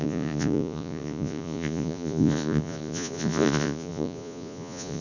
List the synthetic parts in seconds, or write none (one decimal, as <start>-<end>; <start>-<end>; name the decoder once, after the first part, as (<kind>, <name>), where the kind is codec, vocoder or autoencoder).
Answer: 0.0-5.0 (vocoder, Vocos)